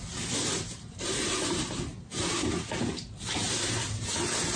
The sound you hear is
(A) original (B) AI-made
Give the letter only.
A